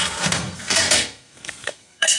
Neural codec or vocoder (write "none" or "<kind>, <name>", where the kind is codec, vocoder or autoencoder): codec, SNAC